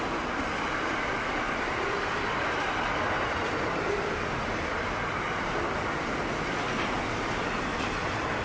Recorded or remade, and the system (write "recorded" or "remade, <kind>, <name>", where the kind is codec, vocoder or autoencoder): recorded